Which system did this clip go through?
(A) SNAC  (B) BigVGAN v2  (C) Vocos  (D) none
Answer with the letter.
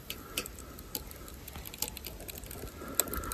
D